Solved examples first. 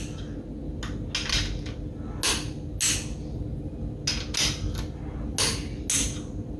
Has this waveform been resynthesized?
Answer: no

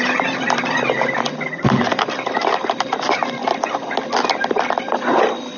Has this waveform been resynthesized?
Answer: no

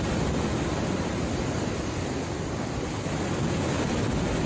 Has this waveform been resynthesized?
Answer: no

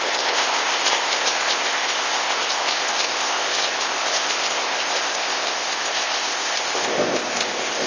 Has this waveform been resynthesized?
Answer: yes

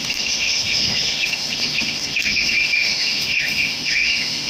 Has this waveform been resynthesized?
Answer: yes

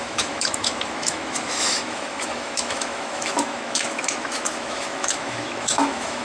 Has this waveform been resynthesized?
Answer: yes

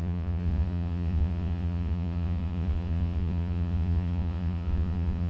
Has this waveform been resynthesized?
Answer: yes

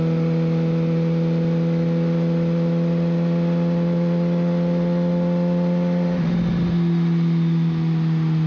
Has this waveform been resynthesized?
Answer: no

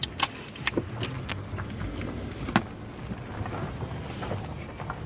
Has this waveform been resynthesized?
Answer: no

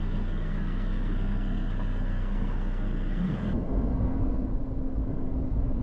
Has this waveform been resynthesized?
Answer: yes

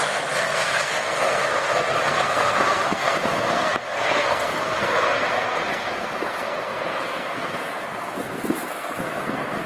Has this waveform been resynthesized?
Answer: yes